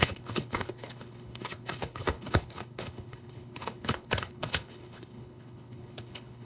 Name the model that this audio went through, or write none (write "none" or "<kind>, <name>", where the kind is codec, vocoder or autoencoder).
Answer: codec, HILCodec